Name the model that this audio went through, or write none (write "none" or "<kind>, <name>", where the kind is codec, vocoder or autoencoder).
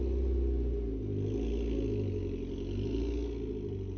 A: none